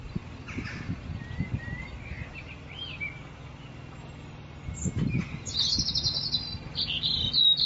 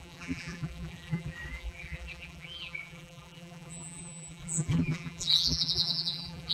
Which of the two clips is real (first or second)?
first